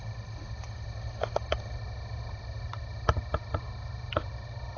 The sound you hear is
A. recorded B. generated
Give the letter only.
A